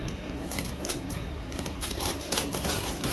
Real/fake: fake